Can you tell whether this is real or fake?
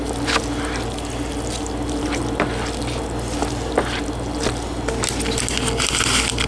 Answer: real